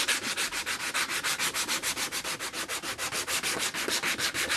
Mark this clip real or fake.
real